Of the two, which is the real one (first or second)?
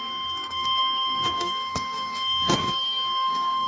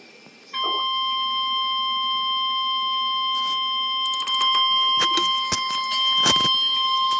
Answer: second